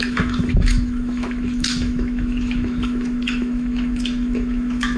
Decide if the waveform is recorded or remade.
remade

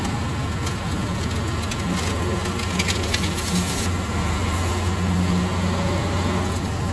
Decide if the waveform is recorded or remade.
recorded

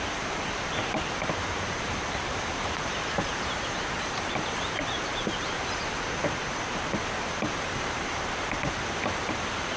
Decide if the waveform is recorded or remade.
remade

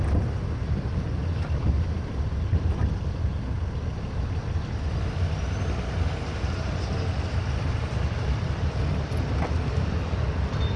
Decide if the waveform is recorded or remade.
recorded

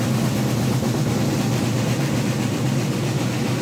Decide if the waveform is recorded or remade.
recorded